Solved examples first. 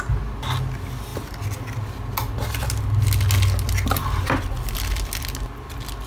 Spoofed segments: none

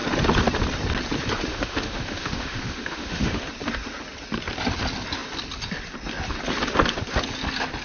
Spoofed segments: 1.5-3.4

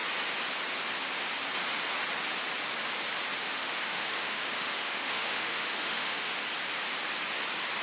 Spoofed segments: 3.4-6.4

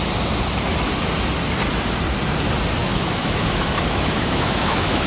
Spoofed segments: 2.8-5.1

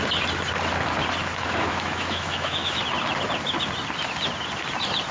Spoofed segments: 1.4-2.8

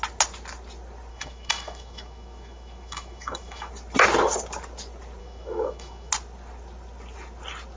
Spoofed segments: 1.1-3.7; 5.2-6.1